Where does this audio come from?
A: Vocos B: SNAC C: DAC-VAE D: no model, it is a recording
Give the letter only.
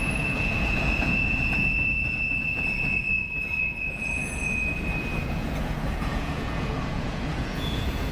A